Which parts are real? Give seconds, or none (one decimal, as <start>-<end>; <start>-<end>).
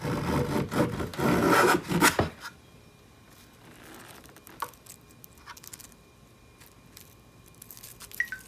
0.0-8.5